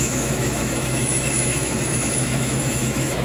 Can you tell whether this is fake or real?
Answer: fake